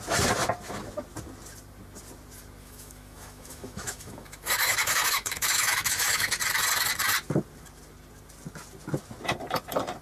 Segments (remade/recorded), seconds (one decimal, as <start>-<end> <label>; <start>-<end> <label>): 0.0-2.6 recorded; 2.6-6.3 remade; 6.3-10.0 recorded